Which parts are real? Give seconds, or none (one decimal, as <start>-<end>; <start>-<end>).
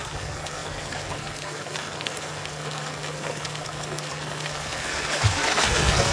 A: none